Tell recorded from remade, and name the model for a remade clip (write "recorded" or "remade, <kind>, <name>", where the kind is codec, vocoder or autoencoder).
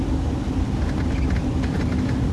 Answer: recorded